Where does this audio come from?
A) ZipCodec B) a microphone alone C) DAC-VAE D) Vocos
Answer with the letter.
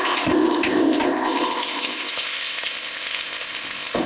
A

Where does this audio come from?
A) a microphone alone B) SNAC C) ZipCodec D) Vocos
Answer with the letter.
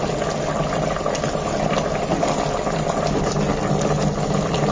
A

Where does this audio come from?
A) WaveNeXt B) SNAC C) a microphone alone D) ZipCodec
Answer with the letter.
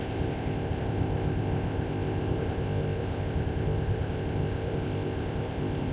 D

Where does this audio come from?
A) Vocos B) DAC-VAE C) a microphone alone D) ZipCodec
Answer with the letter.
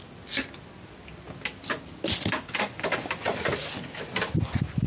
C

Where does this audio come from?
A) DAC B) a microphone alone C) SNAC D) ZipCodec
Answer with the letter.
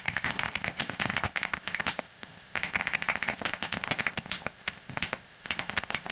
D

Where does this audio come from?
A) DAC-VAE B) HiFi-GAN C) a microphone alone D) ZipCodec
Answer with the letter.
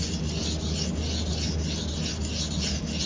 C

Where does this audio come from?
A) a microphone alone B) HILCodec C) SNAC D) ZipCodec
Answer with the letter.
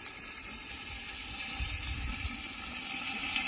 A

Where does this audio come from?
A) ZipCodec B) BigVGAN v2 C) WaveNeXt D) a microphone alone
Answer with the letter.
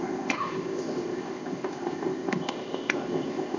A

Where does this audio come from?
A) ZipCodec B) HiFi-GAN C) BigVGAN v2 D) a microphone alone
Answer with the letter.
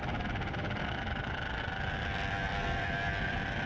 D